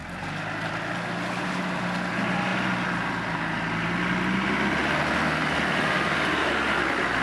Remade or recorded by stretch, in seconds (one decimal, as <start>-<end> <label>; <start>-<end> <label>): 0.0-7.2 recorded